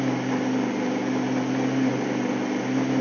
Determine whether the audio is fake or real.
real